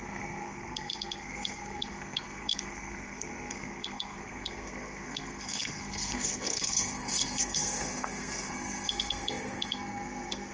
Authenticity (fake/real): fake